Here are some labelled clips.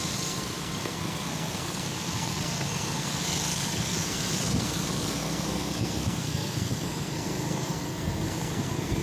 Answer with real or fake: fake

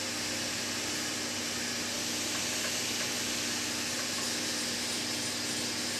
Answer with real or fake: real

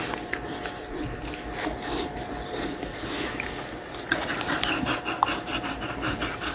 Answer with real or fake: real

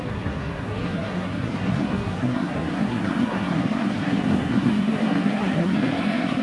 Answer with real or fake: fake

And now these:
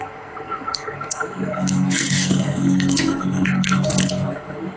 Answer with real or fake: fake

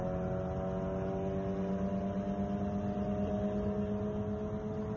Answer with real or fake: real